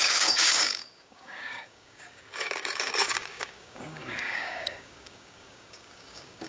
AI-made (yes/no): yes